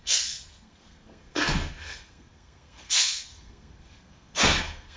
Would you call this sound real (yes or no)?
no